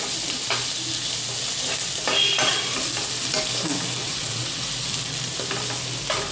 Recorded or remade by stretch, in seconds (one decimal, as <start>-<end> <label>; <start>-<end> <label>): 0.0-4.0 recorded; 4.0-4.6 remade; 4.6-6.3 recorded